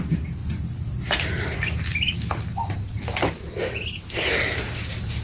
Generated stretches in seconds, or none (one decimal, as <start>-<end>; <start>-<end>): 0.4-1.8